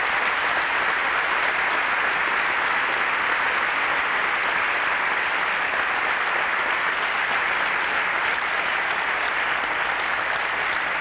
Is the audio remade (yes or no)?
no